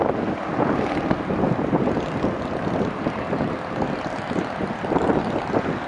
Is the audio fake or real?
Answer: real